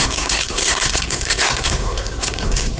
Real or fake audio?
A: fake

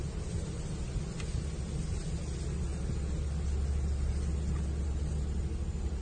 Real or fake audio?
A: real